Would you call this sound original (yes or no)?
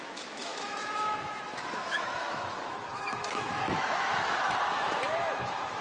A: no